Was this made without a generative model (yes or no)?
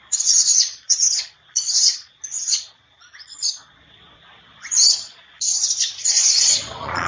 no